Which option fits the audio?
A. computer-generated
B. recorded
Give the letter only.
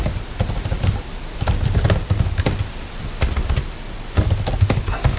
B